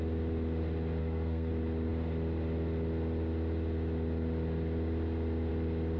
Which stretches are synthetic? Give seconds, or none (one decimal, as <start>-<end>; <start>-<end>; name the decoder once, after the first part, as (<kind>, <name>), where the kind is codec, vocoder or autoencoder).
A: 1.0-1.5 (codec, SNAC)